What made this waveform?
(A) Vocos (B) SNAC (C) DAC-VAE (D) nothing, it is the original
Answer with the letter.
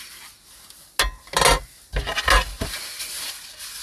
D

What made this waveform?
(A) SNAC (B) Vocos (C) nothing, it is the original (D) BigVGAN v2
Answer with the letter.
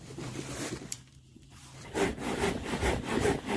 D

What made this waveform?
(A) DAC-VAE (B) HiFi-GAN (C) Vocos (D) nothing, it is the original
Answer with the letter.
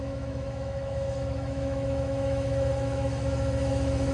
A